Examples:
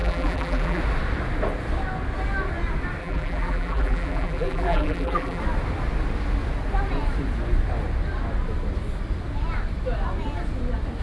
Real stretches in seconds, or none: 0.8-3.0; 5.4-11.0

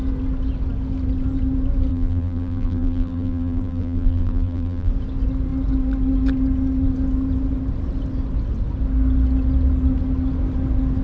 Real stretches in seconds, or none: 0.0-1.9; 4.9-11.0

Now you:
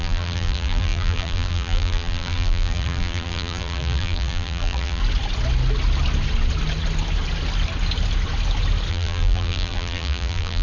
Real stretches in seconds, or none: 5.0-8.9

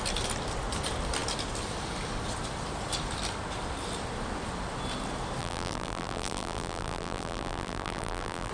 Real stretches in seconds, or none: 0.0-5.4